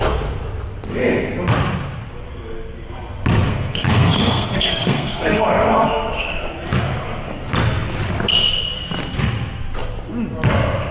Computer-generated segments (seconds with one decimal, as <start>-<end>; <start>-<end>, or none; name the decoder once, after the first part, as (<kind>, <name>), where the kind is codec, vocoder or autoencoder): 3.5-6.1 (codec, SNAC)